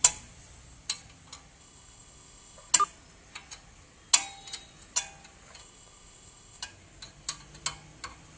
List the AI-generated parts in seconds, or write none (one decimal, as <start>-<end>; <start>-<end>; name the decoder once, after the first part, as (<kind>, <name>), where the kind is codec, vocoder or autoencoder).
1.6-2.7 (codec, ZipCodec); 5.6-6.6